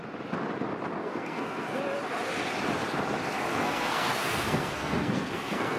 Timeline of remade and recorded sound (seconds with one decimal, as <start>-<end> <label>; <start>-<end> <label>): 0.0-1.0 recorded; 1.0-1.8 remade; 1.8-3.5 recorded; 3.5-5.8 remade